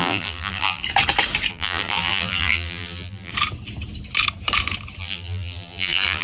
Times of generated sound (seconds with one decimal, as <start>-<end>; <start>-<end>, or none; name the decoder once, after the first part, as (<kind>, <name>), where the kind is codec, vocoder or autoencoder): 0.0-0.8 (vocoder, BigVGAN v2); 1.5-3.3; 5.0-6.2